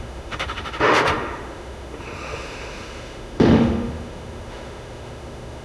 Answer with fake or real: fake